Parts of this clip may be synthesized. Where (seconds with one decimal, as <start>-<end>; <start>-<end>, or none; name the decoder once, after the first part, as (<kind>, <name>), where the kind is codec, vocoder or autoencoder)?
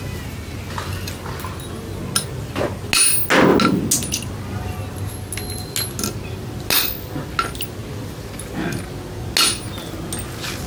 none